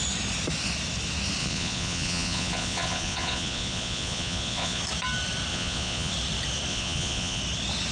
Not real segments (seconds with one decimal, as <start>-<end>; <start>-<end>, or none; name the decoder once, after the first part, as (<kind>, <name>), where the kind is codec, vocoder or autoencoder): 1.4-4.8 (vocoder, Vocos); 5.5-6.1; 6.7-7.4